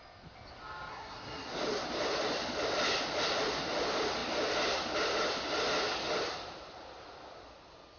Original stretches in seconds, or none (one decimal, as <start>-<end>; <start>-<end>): 0.0-0.9; 1.5-8.0